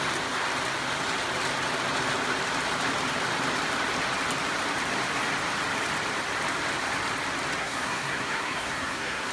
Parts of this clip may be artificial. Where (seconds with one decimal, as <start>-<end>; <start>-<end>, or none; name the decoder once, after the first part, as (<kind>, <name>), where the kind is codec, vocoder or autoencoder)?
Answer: 7.6-9.3 (codec, SNAC)